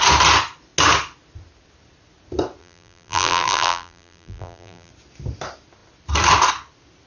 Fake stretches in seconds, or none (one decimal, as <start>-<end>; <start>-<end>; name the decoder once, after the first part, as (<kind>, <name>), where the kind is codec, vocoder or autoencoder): 2.6-4.9 (vocoder, BigVGAN v2)